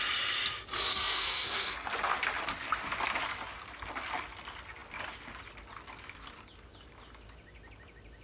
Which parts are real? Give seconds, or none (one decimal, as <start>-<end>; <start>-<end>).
0.0-0.9; 1.9-8.2